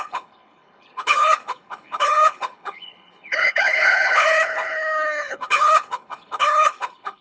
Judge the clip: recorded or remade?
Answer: remade